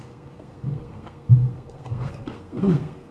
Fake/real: fake